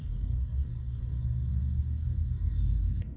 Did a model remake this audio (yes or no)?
yes